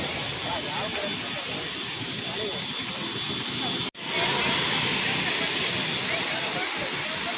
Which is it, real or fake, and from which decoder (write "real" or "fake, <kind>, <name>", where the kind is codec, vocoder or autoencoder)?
real